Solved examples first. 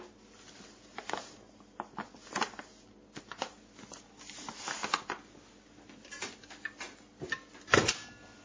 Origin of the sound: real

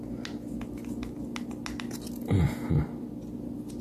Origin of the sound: real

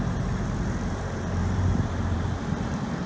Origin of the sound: fake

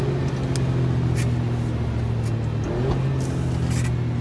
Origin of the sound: real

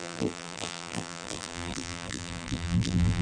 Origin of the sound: fake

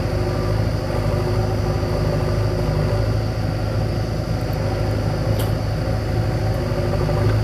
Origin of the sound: real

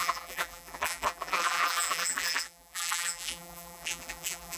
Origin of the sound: fake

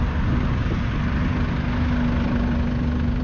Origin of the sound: real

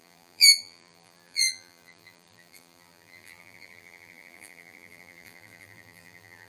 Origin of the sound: fake